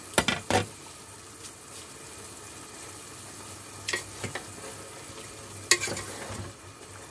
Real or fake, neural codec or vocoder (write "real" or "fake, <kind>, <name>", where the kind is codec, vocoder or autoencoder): real